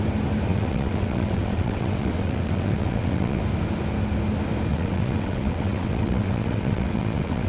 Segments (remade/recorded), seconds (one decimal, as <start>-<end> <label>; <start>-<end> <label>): 0.0-0.5 recorded; 0.5-3.4 remade; 3.4-4.7 recorded; 4.7-7.5 remade